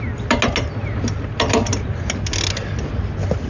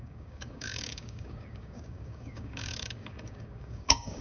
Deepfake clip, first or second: second